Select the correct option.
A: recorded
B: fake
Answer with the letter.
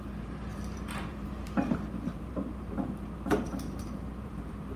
B